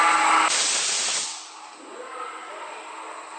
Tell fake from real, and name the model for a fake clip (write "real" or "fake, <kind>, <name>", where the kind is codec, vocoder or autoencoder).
real